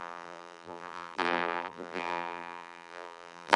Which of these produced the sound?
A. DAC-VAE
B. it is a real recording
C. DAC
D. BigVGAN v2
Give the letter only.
D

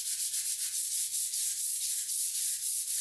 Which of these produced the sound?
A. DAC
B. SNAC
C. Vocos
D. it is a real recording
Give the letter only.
D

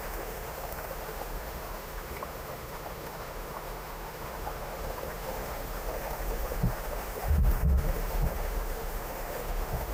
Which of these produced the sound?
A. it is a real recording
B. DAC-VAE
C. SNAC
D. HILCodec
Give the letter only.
B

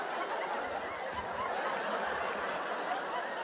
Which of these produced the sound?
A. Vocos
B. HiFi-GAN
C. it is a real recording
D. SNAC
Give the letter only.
C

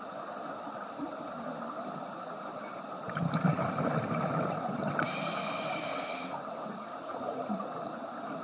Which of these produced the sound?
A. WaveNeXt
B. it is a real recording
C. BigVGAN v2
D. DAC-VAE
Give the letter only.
C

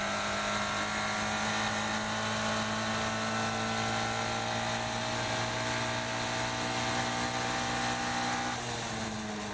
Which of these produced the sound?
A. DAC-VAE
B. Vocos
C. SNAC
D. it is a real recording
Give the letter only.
D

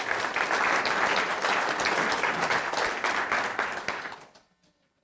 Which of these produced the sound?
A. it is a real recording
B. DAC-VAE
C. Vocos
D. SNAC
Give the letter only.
A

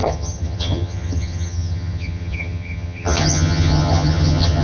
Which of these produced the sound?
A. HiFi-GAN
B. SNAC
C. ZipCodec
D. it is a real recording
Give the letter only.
A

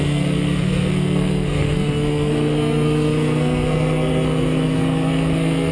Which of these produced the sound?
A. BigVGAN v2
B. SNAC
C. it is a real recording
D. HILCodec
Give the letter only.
B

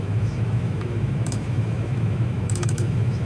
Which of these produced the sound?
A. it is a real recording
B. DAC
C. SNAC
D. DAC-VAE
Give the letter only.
D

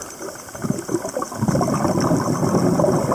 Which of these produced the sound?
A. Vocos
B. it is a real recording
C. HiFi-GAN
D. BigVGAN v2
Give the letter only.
B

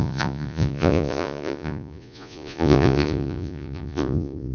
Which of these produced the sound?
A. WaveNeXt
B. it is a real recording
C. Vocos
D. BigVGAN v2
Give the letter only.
C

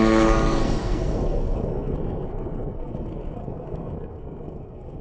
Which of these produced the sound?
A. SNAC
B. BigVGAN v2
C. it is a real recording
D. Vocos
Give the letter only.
A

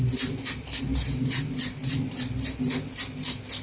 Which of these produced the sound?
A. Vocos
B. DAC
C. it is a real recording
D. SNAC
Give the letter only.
C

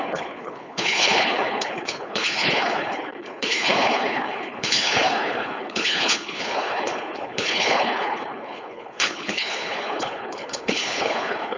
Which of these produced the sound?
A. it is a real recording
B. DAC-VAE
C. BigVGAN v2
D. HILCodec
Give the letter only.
D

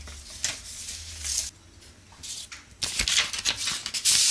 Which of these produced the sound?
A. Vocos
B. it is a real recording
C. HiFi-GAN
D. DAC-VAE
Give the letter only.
B